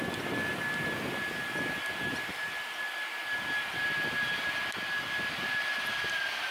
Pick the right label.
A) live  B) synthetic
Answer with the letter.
A